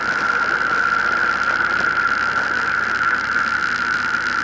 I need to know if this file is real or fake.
real